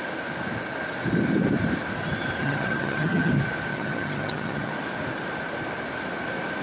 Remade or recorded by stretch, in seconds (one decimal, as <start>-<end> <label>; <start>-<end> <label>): 0.0-2.4 recorded; 2.4-3.3 remade; 3.3-3.7 recorded; 3.7-4.7 remade; 4.7-6.6 recorded